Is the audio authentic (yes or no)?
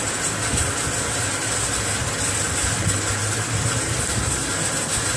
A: yes